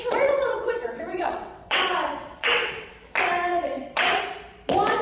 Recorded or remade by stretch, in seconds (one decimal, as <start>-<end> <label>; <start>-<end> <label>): 0.0-2.9 remade; 2.9-3.5 recorded; 3.5-4.2 remade; 4.2-5.0 recorded